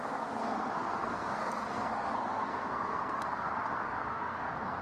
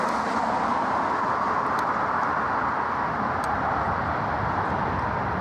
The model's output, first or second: first